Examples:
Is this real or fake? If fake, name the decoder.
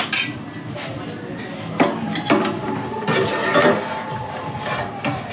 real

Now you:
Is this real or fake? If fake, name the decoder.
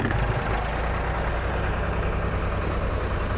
real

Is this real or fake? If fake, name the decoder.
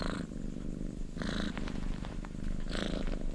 fake, vocoder, BigVGAN v2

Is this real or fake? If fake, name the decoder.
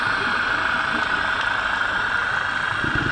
real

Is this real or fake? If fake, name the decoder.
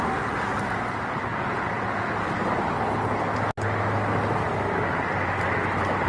real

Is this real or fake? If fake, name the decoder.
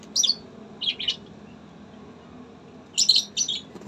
real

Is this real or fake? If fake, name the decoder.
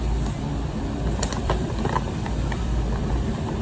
fake, vocoder, BigVGAN v2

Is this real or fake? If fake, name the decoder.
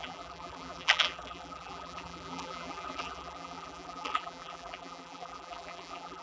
fake, vocoder, BigVGAN v2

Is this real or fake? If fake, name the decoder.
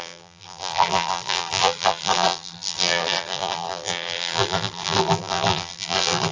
fake, vocoder, BigVGAN v2